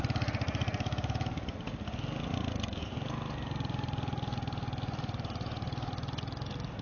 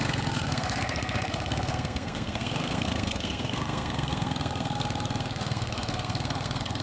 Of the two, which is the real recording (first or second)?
first